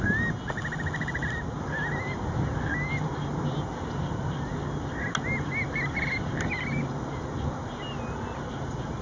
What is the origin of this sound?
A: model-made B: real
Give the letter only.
B